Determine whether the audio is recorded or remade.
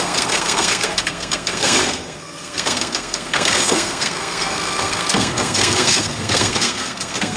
remade